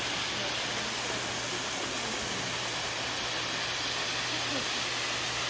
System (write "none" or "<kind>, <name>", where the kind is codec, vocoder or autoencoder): none